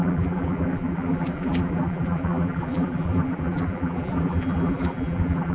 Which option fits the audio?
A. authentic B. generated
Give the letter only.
B